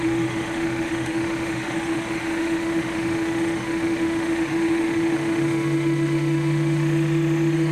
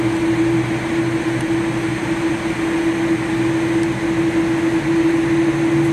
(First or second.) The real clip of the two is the second